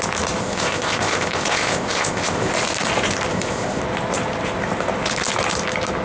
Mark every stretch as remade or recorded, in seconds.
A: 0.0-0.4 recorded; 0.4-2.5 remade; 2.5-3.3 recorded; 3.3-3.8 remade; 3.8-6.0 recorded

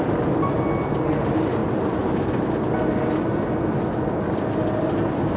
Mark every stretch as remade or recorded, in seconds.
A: 0.0-5.4 recorded

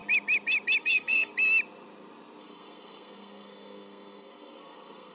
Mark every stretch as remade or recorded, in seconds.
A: 0.0-0.8 recorded; 0.8-1.3 remade; 1.3-2.4 recorded; 2.4-5.1 remade

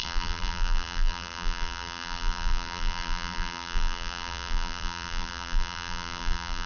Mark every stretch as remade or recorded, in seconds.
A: 0.0-6.7 remade

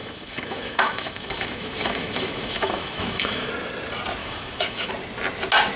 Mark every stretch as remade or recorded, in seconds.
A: 0.0-3.5 remade; 3.5-4.2 recorded; 4.2-4.9 remade; 4.9-5.8 recorded

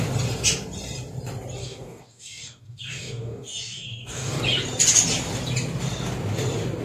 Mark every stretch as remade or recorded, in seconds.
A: 0.0-1.6 recorded; 1.6-4.4 remade; 4.4-6.8 recorded

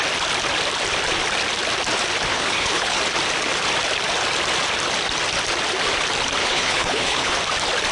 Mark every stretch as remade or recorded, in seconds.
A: 0.0-2.3 recorded; 2.3-3.0 remade; 3.0-6.4 recorded; 6.4-7.4 remade; 7.4-7.9 recorded

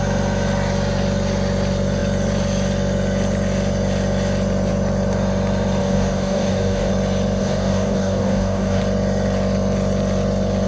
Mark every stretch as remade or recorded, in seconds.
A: 0.0-5.8 recorded; 5.8-6.9 remade; 6.9-7.4 recorded; 7.4-8.8 remade; 8.8-10.7 recorded